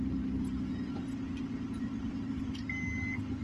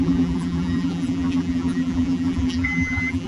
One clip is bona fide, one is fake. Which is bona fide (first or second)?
first